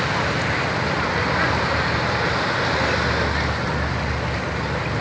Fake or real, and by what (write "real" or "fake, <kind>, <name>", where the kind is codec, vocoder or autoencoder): real